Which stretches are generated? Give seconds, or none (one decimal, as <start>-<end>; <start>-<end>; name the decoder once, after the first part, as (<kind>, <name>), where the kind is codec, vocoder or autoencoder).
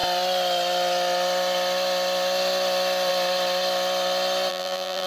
4.5-5.1 (vocoder, BigVGAN v2)